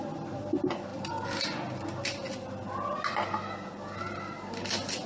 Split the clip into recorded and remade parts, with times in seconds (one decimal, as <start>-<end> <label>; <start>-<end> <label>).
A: 0.0-5.1 recorded